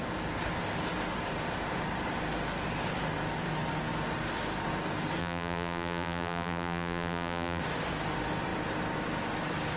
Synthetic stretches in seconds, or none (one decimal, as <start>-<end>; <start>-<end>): 5.2-7.6